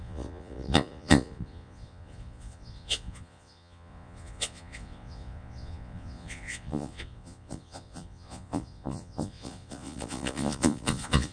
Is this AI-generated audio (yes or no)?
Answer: yes